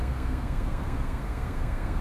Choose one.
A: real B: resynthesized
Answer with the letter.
B